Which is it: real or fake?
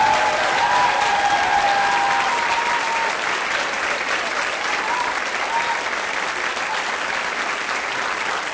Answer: real